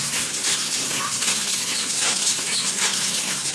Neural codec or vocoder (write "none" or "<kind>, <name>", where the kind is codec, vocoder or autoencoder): codec, SNAC